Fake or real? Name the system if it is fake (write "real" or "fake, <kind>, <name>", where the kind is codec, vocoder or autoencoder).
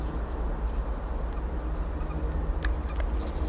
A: real